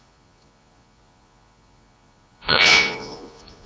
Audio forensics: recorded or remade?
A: remade